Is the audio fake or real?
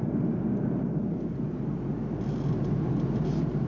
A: real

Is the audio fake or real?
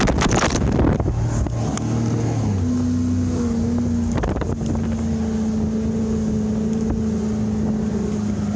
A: real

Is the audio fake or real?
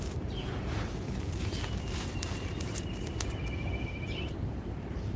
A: fake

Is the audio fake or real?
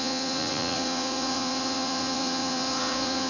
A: fake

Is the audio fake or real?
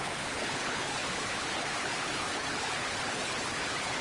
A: fake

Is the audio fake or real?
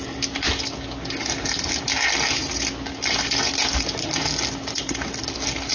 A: real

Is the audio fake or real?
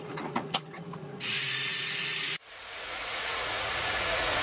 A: fake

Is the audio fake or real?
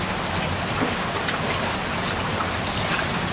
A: real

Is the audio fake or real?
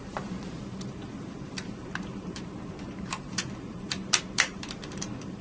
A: fake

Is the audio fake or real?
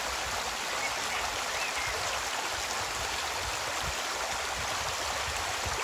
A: real